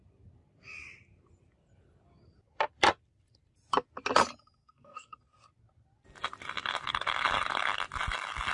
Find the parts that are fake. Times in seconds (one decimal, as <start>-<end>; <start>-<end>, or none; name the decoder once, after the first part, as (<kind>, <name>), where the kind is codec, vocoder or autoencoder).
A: 4.6-5.2 (codec, SNAC)